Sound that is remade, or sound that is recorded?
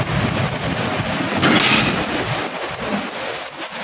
recorded